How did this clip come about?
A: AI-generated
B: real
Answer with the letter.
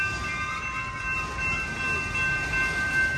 B